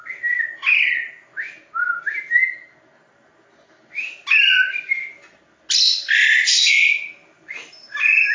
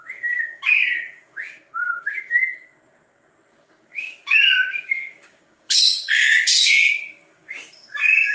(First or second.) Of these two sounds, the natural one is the first